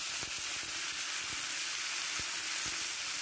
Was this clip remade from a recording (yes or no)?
no